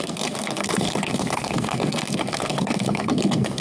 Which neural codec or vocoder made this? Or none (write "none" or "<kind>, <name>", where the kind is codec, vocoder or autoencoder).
codec, SNAC